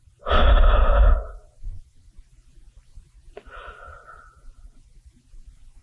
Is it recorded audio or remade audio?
recorded